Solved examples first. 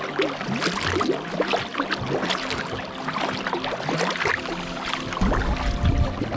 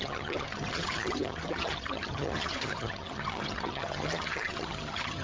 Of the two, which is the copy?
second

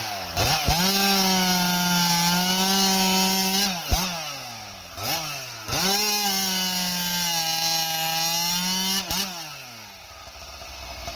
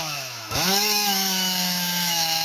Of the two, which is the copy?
second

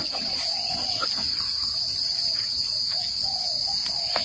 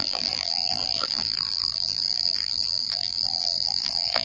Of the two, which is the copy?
second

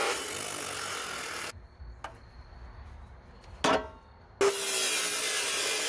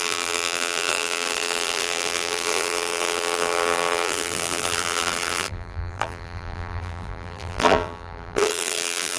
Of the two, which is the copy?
second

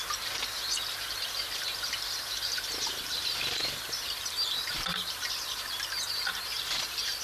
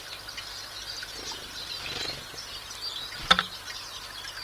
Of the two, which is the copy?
first